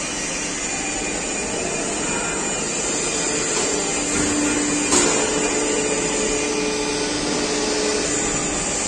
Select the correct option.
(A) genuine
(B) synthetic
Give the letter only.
A